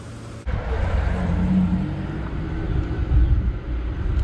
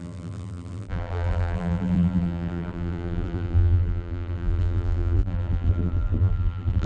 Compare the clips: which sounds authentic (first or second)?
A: first